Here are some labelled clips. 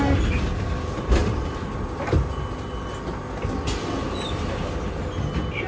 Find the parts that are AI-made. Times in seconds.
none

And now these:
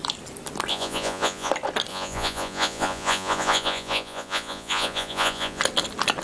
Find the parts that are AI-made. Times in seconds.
0.7-1.5 (vocoder, Vocos); 1.9-5.6

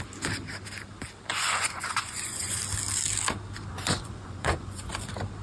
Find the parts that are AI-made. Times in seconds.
1.3-2.6 (vocoder, Vocos); 3.7-4.9

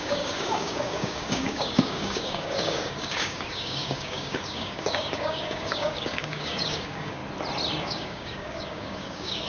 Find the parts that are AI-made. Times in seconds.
0.0-7.2 (codec, DAC); 7.8-9.5

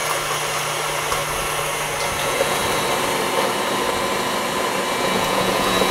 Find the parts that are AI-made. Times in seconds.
2.2-2.6 (vocoder, Vocos); 4.9-5.9